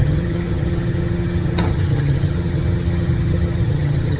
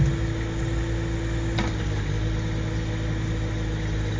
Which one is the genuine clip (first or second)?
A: second